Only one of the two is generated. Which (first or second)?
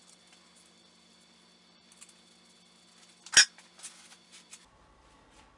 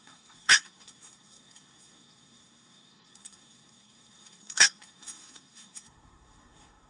second